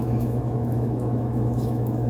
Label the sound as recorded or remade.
remade